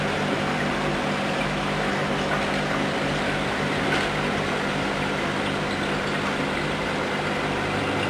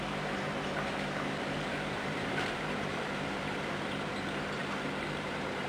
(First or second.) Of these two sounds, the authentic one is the first